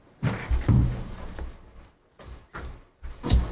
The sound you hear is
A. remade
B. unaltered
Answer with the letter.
B